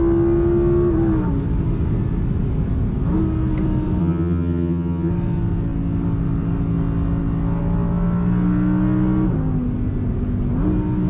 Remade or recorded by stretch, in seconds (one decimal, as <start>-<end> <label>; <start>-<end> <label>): 0.0-4.0 recorded; 4.0-5.1 remade; 5.1-11.1 recorded